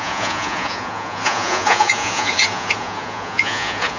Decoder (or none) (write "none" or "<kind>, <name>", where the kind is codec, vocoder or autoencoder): vocoder, Vocos